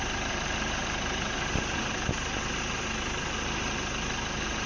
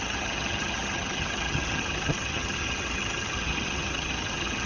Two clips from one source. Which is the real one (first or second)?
first